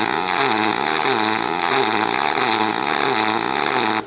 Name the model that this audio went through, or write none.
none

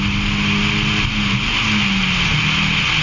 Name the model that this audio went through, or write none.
none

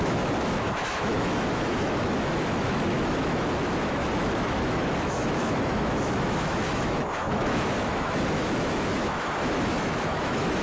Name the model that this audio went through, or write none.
autoencoder, DAC-VAE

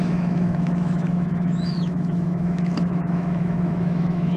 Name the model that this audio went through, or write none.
autoencoder, DAC-VAE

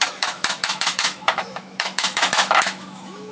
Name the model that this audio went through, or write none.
autoencoder, DAC-VAE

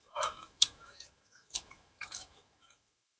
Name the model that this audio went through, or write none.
autoencoder, DAC-VAE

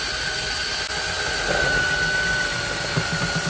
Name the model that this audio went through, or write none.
none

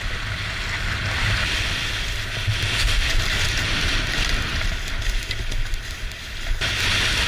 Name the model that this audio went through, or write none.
none